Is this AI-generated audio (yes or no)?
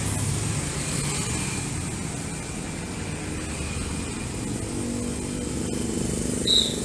no